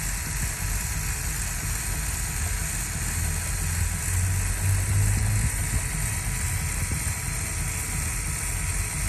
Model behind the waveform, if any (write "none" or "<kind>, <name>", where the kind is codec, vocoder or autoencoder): none